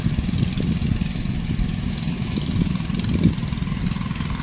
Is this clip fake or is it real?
real